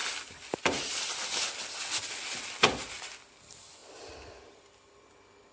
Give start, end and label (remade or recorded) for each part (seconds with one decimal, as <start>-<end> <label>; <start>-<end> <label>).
0.0-5.5 recorded